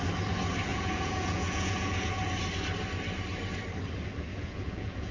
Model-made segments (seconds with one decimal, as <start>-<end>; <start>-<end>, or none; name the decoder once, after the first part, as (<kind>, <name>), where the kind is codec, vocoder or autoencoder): 0.7-2.2 (vocoder, Vocos); 4.3-5.1